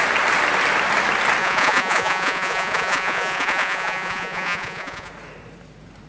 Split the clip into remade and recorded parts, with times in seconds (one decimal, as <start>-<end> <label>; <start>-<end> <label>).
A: 0.0-1.4 recorded; 1.4-5.1 remade; 5.1-6.1 recorded